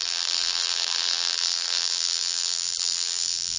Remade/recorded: remade